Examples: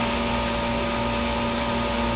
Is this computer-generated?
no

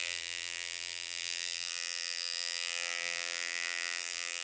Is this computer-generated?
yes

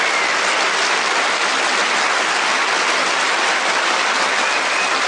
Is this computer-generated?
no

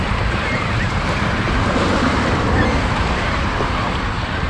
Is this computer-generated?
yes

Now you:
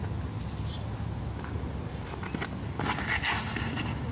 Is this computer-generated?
no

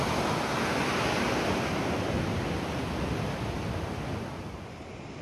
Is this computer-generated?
no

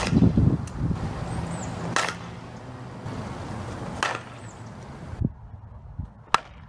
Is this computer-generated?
no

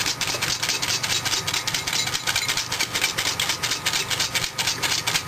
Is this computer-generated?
no